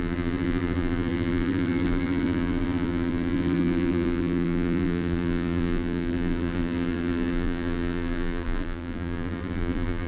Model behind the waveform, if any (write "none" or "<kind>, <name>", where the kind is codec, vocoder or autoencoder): vocoder, BigVGAN v2